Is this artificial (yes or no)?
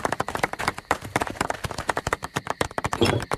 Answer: yes